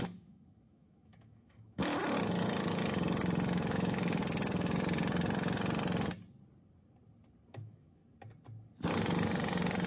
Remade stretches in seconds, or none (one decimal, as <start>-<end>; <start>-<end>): 0.0-2.0; 3.5-4.2; 7.5-8.0

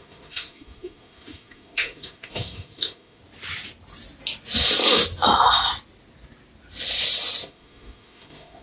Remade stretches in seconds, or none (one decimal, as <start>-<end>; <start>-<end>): 0.0-3.2; 7.4-8.6

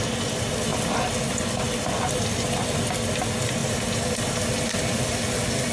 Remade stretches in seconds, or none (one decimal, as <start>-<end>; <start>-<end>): none

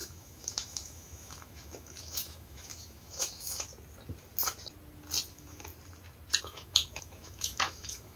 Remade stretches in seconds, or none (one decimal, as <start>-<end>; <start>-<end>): 0.0-3.7; 5.3-5.7; 6.4-8.2

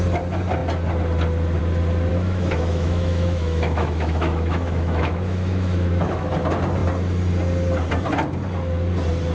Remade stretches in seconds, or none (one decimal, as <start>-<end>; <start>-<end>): 2.1-6.3

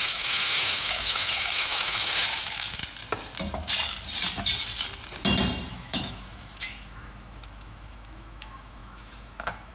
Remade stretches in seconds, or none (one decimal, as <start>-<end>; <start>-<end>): 0.0-2.8; 5.7-9.7

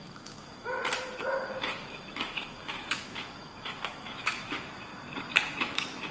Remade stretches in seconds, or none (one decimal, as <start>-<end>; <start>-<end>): 0.0-0.8; 1.4-4.9; 5.6-6.1